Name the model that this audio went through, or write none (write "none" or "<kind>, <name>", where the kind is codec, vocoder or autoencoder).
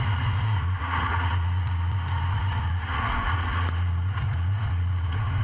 vocoder, Vocos